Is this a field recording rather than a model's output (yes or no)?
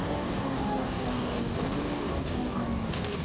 no